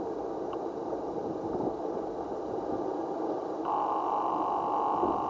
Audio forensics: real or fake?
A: real